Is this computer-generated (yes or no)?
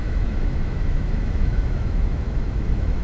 yes